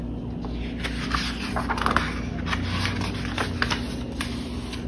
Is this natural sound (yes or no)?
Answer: yes